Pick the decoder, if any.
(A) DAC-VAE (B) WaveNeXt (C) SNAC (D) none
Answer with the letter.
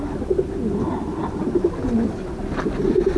D